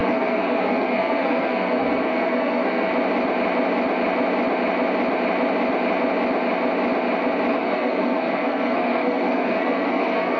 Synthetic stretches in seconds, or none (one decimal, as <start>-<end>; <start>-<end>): 0.0-2.9; 7.5-10.4